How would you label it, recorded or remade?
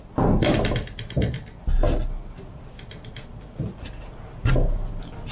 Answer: recorded